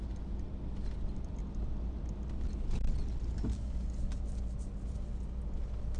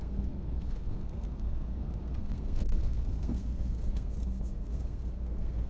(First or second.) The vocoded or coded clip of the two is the second